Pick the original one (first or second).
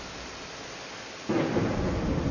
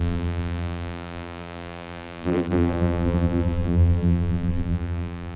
first